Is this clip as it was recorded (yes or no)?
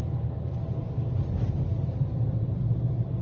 no